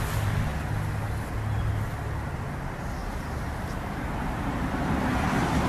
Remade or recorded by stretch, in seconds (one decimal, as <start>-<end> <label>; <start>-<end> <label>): 0.0-3.0 recorded; 3.0-4.7 remade; 4.7-5.7 recorded